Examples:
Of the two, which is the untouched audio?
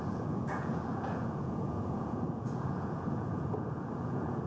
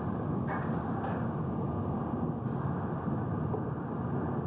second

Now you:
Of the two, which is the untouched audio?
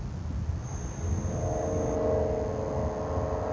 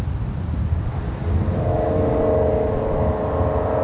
first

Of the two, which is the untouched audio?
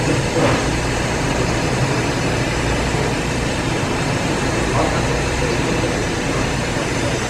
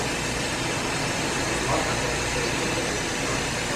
second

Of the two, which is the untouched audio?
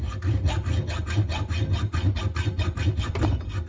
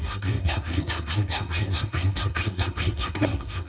first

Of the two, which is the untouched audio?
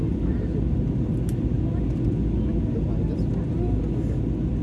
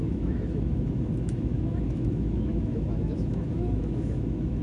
first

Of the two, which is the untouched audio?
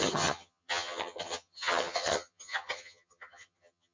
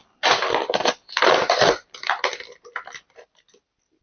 second